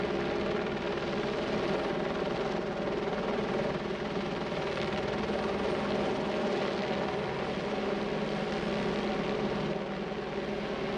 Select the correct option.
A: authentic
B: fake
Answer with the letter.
A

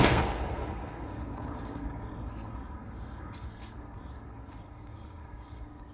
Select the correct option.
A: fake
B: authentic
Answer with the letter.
A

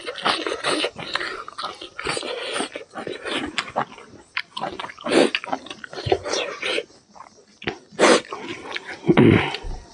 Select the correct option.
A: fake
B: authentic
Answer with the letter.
B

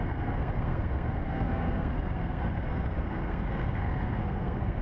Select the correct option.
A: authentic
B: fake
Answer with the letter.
B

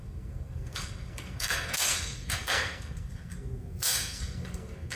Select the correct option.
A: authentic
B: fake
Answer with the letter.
B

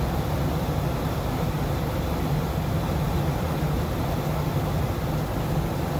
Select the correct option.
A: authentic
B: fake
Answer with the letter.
A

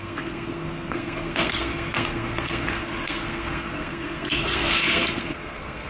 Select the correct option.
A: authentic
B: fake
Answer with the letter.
B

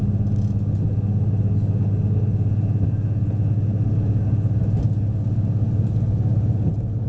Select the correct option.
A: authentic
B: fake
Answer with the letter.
A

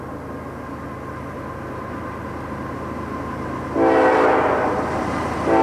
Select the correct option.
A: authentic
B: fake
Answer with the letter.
A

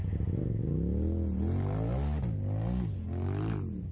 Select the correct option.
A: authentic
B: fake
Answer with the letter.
A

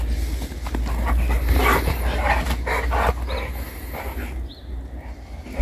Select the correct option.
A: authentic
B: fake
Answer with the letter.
A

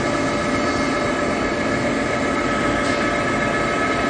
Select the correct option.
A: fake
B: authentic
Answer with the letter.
B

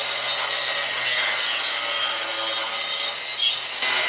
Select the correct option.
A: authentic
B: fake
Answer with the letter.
A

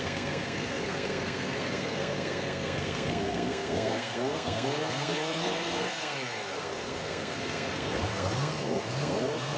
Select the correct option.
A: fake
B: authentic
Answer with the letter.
A